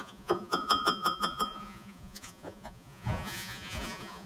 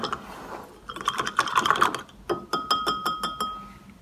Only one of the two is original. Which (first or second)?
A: second